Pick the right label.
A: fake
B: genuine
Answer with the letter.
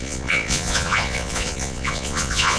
A